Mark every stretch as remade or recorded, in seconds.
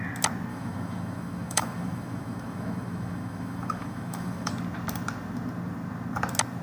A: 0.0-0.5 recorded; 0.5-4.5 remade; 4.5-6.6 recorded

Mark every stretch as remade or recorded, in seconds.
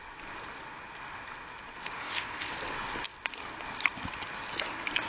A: 0.0-2.0 recorded; 2.0-2.5 remade; 2.5-5.1 recorded